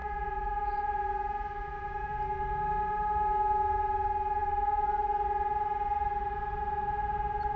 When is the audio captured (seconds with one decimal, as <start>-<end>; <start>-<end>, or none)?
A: 0.0-7.6